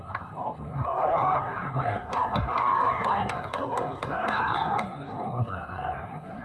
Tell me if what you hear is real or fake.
fake